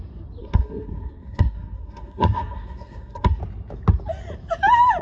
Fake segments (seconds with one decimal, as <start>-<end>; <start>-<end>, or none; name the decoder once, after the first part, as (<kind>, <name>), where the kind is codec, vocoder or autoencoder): 0.4-3.4 (codec, SNAC)